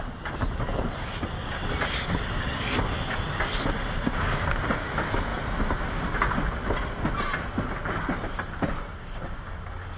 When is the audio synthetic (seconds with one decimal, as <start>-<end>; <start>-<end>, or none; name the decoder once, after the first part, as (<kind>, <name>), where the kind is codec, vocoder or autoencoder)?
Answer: none